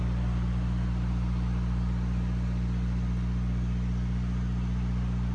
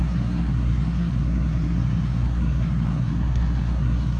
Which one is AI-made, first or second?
second